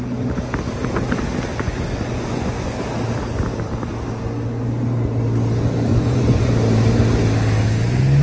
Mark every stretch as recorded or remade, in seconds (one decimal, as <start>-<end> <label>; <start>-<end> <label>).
0.0-1.5 recorded; 1.5-2.8 remade; 2.8-5.9 recorded; 5.9-6.5 remade; 6.5-8.2 recorded